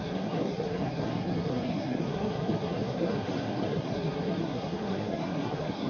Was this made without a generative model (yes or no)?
no